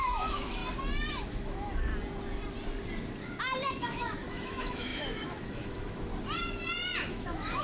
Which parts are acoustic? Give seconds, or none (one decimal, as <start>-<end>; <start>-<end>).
0.6-1.1; 1.9-3.7; 6.1-7.1